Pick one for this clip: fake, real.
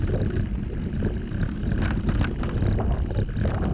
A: real